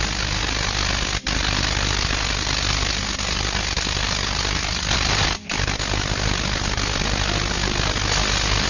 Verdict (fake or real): real